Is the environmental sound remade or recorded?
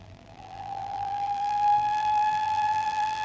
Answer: remade